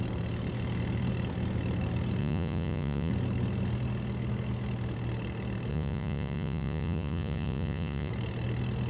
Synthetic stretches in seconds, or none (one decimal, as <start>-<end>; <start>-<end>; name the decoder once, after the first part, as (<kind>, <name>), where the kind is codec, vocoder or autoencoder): 2.2-3.1 (vocoder, Vocos); 5.7-8.1